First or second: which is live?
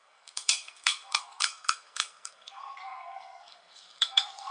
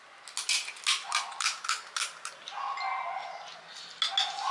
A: second